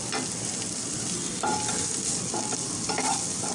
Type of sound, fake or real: real